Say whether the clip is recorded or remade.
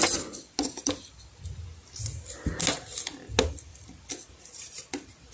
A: recorded